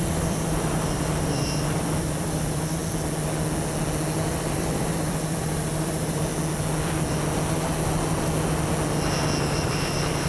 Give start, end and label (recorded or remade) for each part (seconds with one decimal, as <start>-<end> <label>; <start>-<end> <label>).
0.0-2.8 remade; 2.8-4.3 recorded; 4.3-6.3 remade; 6.3-9.5 recorded; 9.5-10.3 remade